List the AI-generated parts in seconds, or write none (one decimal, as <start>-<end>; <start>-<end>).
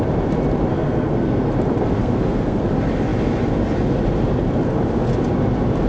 0.7-1.5; 2.0-2.6